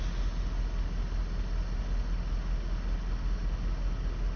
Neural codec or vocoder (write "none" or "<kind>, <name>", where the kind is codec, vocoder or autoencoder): none